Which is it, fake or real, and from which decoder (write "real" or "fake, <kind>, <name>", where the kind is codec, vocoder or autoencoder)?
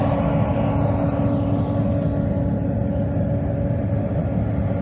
real